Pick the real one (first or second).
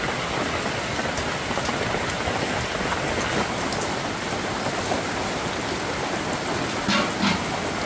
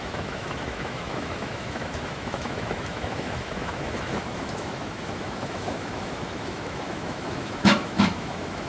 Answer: first